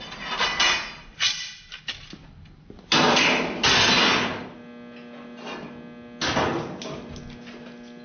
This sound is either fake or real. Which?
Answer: real